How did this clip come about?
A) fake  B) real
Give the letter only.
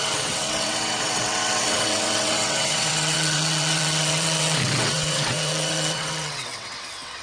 A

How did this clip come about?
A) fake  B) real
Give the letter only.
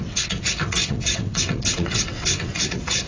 A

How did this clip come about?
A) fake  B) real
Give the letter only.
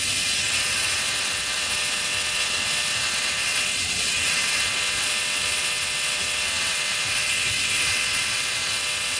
A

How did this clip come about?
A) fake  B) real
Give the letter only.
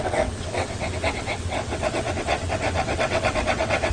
A